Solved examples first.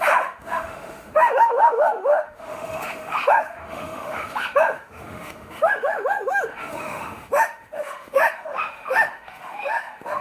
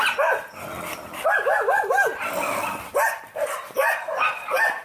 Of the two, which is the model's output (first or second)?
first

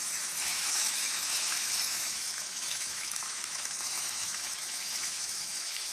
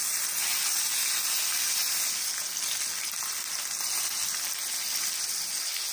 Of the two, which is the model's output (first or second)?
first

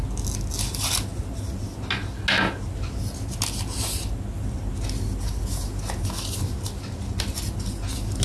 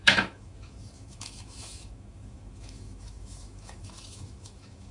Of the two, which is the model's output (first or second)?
second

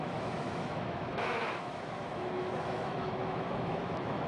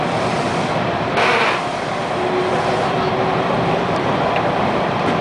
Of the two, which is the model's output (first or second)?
first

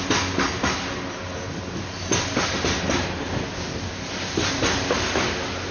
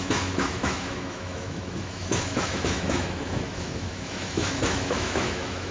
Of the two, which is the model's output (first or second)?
second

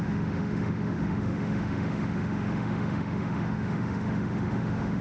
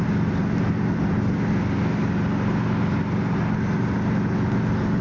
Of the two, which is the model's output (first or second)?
first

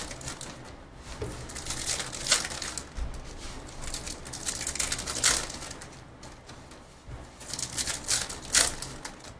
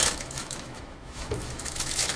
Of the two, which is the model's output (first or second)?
second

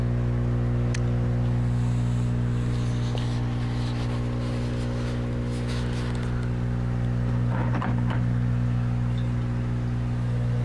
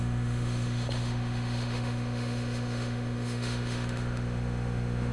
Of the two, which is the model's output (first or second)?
second